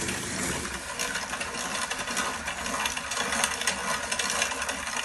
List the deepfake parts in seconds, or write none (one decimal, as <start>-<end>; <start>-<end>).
none